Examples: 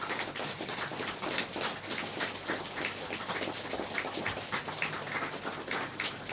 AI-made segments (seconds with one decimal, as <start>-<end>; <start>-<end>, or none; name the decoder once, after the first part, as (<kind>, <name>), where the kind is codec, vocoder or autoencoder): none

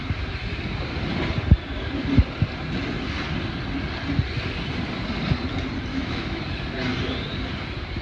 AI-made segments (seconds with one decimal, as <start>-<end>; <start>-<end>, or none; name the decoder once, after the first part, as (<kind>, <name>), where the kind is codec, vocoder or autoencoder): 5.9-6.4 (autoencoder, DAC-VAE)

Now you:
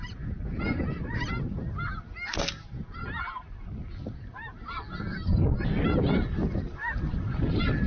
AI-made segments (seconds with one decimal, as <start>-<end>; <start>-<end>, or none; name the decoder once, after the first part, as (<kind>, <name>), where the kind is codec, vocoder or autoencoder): none

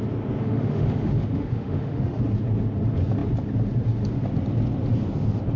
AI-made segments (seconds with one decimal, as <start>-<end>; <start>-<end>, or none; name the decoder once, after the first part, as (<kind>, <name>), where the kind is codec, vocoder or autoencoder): 0.4-2.2 (autoencoder, DAC-VAE)